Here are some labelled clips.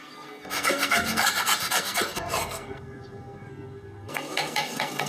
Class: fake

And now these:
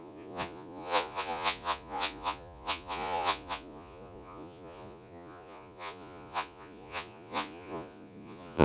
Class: fake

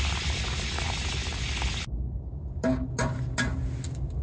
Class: real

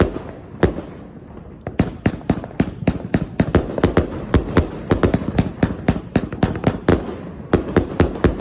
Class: real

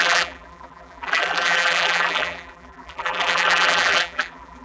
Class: fake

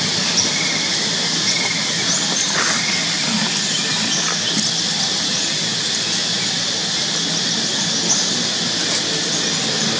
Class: real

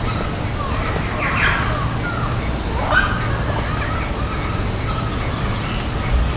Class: real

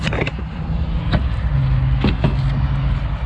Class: real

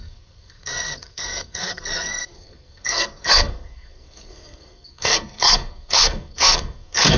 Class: fake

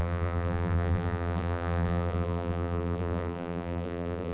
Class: fake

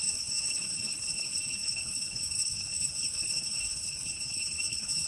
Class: fake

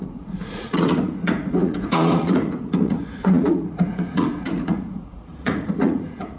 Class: fake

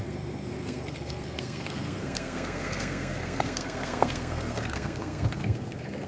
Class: fake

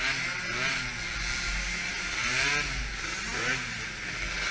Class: real